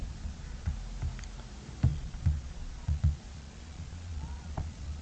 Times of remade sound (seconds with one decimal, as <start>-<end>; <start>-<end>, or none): 0.0-0.7; 1.9-5.0